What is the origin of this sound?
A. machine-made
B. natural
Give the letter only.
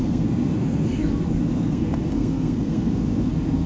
A